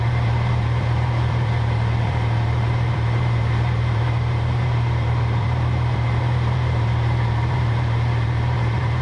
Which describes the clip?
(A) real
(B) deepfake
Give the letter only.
B